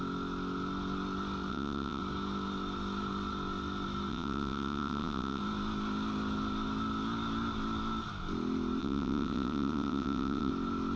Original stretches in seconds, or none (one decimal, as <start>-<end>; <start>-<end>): 0.0-1.5; 2.0-4.1; 5.4-8.8; 10.5-11.0